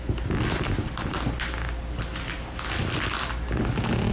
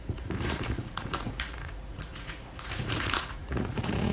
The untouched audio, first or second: first